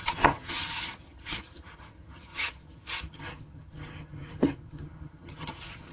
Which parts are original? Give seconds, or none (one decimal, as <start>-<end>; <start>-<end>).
none